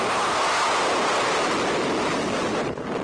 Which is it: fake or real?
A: real